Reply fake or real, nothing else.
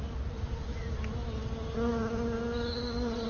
real